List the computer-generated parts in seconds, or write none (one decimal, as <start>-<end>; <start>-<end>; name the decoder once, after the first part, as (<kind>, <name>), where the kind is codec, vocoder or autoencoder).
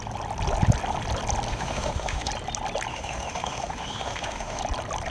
1.5-2.3 (autoencoder, DAC-VAE); 2.9-4.6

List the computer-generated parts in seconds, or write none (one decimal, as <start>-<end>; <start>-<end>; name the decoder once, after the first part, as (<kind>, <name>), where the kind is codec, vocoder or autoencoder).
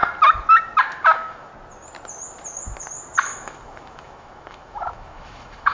0.8-1.5 (autoencoder, DAC-VAE); 3.2-5.7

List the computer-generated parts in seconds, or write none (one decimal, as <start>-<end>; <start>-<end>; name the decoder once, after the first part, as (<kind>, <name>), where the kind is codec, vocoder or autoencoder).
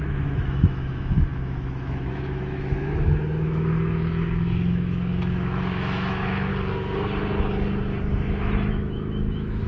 0.0-6.5 (autoencoder, DAC-VAE); 8.7-9.7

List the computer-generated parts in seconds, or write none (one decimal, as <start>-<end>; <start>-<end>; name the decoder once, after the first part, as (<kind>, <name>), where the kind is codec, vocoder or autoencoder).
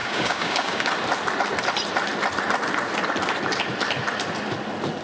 0.0-0.9 (codec, DAC)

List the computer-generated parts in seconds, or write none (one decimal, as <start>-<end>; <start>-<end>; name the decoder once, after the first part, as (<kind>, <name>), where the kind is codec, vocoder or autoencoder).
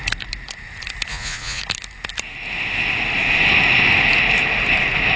1.1-1.6 (vocoder, Vocos)